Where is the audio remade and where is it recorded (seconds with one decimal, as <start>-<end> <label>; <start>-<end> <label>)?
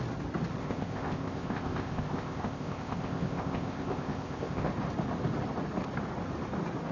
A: 0.0-0.6 recorded; 0.6-4.7 remade; 4.7-6.9 recorded